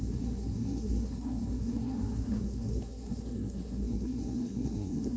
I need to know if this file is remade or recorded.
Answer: remade